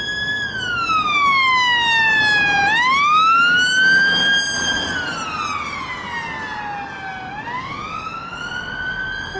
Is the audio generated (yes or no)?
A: no